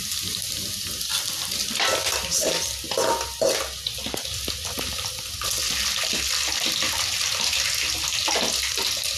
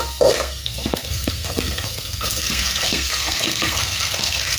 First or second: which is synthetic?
second